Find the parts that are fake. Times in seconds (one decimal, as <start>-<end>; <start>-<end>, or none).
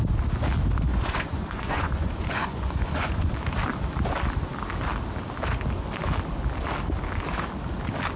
0.9-3.3